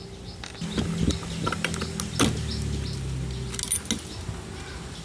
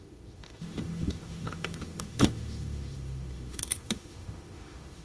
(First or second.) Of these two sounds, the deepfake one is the second